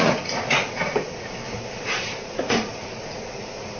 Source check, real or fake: fake